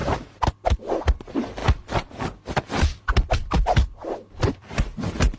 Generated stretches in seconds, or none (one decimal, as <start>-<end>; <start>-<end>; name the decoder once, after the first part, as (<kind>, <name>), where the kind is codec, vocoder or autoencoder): none